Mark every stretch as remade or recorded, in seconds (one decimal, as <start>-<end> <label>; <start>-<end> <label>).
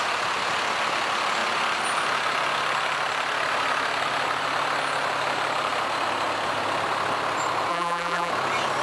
0.0-7.7 recorded; 7.7-8.3 remade; 8.3-8.8 recorded